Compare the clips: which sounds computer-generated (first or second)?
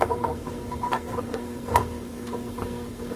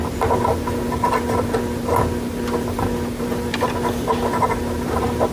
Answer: first